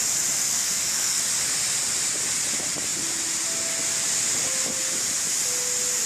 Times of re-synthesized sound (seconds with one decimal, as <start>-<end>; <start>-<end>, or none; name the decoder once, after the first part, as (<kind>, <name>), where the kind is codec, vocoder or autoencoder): 0.5-1.2 (codec, SNAC)

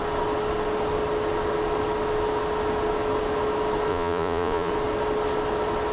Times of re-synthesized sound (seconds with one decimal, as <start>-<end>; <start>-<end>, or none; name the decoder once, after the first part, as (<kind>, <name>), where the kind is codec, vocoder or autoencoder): 3.9-4.7 (vocoder, Vocos)

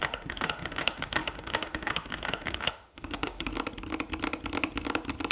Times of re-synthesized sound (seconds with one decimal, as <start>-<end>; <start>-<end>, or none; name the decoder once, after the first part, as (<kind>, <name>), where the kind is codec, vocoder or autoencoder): 0.0-3.5 (autoencoder, DAC-VAE)

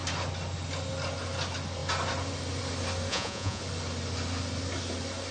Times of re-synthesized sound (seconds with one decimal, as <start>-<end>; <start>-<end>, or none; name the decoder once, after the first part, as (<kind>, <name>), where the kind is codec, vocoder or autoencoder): 3.1-3.6 (vocoder, Vocos)